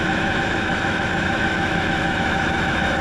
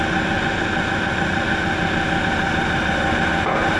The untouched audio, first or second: second